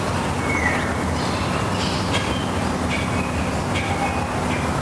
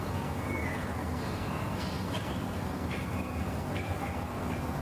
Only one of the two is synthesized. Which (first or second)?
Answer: second